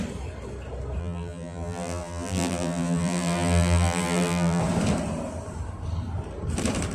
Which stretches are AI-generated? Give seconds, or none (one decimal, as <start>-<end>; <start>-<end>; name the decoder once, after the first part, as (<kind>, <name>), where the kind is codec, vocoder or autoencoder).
1.0-4.6 (vocoder, BigVGAN v2)